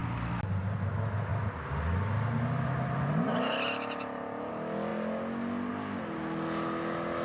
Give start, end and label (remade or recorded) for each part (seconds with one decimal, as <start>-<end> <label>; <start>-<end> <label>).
0.0-7.2 recorded